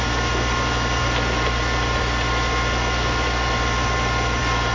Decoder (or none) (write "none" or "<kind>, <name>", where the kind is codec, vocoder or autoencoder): none